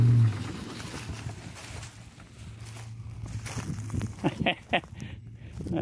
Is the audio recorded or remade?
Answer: recorded